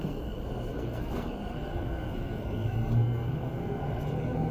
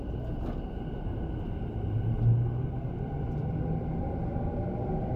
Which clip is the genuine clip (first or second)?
second